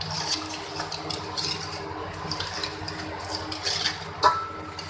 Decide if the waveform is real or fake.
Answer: real